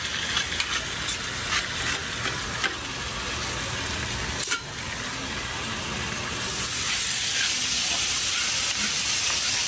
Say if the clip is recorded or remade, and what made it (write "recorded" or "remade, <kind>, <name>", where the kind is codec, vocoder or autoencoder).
recorded